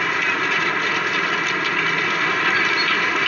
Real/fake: real